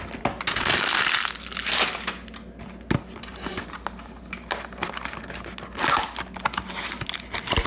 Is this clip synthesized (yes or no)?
no